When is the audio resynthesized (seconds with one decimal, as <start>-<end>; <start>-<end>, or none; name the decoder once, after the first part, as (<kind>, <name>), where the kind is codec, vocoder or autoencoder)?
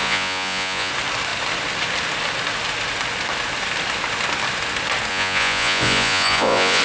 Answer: 0.0-0.9 (vocoder, Vocos); 5.1-6.8